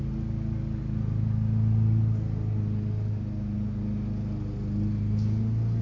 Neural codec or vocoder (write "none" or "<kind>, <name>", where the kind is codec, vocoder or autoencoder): none